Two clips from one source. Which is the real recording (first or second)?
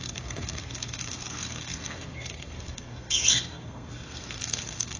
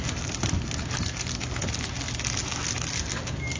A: second